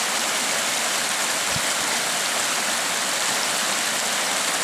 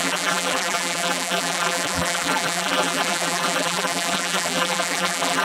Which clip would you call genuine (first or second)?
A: first